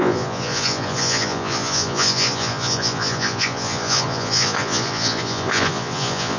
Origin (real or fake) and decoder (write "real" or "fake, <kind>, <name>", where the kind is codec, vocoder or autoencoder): fake, vocoder, Vocos